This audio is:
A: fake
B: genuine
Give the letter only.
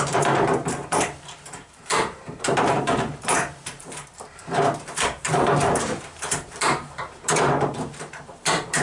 A